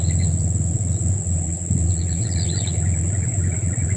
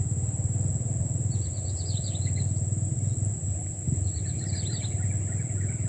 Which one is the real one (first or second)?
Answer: second